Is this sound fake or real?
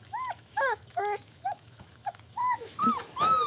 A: fake